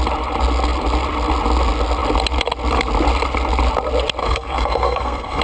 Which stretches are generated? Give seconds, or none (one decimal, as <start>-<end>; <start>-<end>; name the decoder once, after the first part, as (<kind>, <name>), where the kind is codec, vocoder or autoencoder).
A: 4.2-5.4 (codec, SNAC)